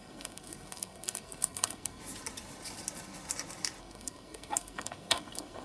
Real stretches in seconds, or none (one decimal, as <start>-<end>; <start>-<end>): 2.0-3.8